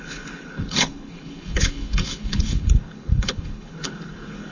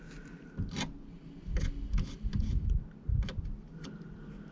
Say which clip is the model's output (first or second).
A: first